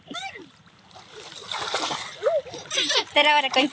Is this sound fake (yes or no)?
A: no